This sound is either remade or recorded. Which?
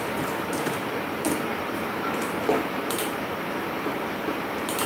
remade